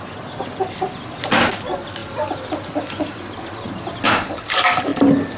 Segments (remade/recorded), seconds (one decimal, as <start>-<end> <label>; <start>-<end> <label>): 0.0-5.4 recorded